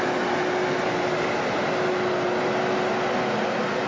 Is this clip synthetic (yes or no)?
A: no